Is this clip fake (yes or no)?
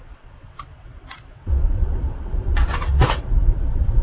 yes